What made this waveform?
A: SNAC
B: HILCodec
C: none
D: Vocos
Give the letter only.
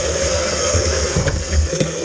A